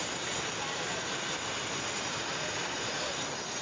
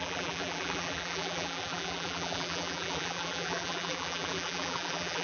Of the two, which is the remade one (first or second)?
second